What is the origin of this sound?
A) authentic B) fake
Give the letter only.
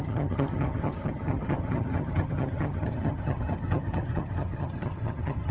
B